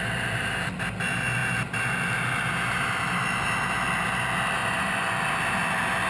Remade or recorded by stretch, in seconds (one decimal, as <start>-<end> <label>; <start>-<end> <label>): 0.0-4.6 recorded; 4.6-5.2 remade; 5.2-6.1 recorded